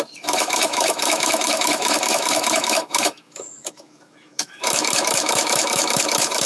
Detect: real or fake fake